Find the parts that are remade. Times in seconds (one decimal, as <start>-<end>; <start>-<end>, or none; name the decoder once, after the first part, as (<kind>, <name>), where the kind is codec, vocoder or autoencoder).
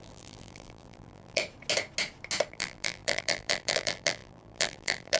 0.0-1.4 (vocoder, BigVGAN v2); 2.5-5.2